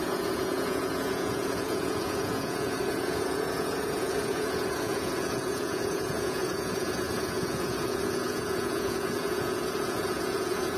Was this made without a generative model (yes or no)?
no